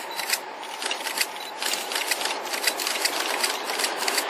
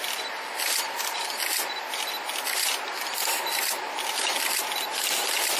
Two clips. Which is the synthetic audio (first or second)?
first